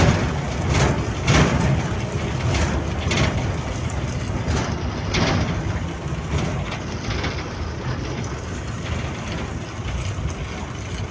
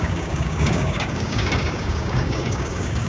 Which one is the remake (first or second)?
second